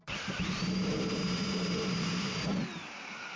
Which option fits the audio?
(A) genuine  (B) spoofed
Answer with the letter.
B